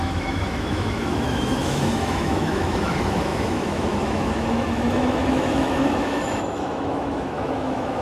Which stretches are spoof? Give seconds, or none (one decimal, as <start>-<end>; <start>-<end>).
0.0-8.0